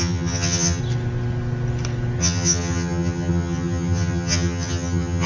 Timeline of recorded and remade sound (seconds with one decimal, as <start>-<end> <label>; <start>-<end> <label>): 0.0-0.8 remade; 0.8-2.2 recorded; 2.2-5.3 remade